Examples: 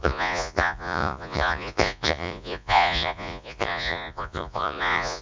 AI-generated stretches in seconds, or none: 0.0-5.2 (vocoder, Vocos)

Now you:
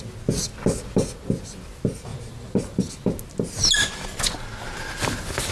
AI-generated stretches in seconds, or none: 2.1-2.9 (vocoder, BigVGAN v2)

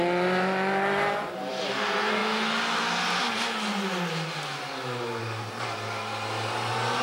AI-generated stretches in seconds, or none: none